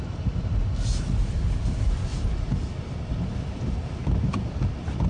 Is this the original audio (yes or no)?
yes